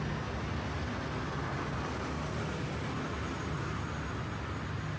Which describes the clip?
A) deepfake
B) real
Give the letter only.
B